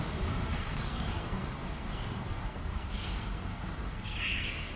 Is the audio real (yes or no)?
no